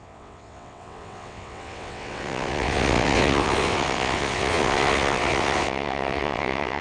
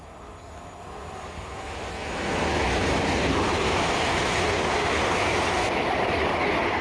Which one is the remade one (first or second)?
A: first